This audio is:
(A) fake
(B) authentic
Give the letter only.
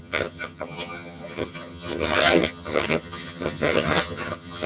A